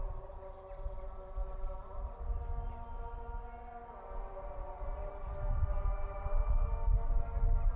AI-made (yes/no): no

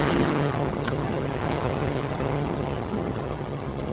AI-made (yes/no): yes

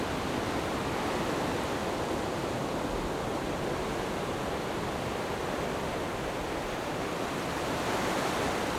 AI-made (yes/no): no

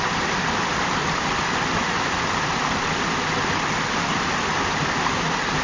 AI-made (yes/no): no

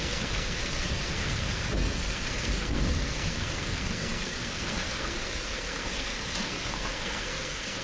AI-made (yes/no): yes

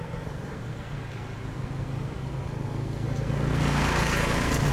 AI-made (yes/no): yes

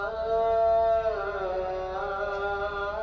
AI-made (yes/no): no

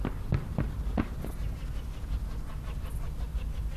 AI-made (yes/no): no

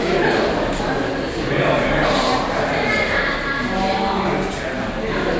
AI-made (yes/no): no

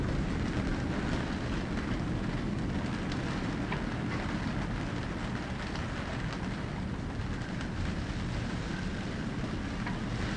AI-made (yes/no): no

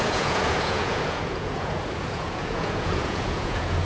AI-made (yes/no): yes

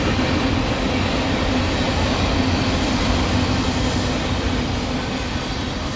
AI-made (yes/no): no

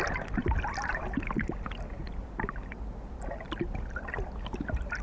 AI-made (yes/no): no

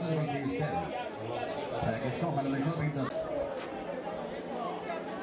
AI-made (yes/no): no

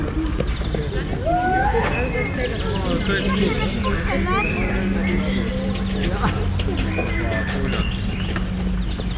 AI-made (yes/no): no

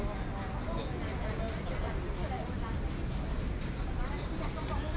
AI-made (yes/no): no